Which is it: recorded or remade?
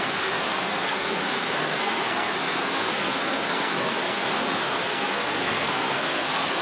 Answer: remade